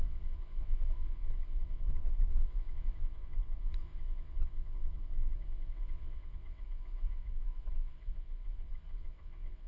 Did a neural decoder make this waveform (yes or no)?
yes